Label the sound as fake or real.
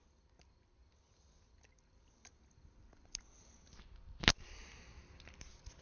real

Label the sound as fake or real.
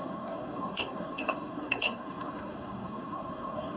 fake